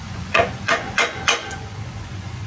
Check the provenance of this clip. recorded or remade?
remade